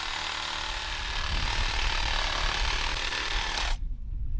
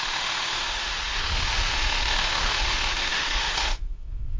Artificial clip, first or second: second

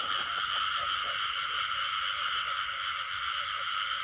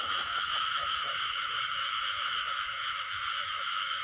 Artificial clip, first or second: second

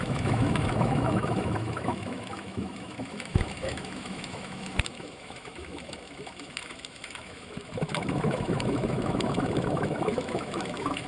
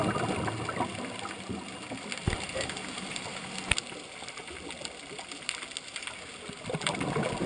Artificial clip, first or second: first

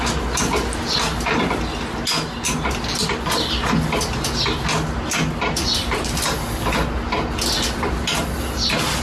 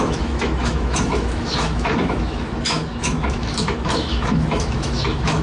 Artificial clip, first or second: second